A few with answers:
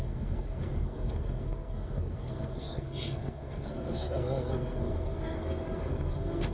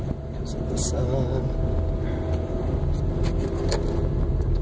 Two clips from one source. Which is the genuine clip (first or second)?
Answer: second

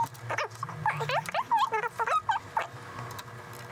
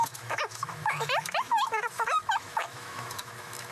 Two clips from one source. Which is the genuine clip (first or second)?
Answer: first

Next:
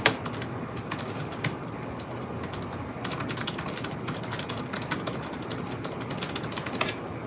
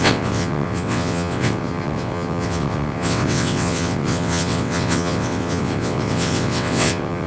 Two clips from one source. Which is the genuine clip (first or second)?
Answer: first